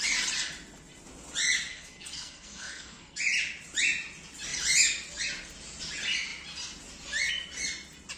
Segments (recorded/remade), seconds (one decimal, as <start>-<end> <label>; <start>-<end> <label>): 0.0-1.7 recorded; 1.7-3.2 remade; 3.2-8.2 recorded